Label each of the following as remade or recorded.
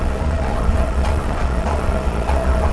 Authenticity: remade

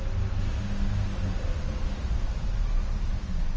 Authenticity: recorded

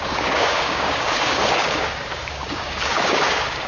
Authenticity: remade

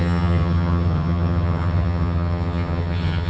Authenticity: remade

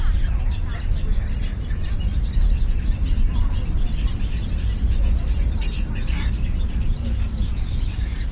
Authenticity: recorded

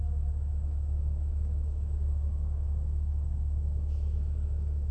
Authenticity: remade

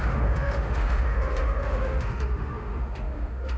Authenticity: remade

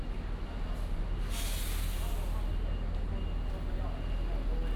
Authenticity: recorded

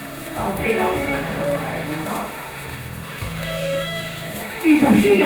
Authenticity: remade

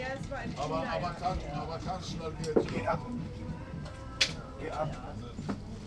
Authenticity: recorded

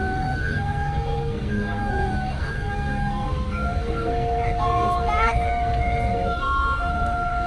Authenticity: remade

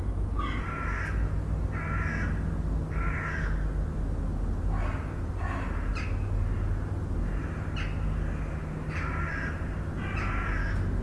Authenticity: recorded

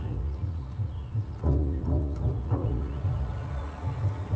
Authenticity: remade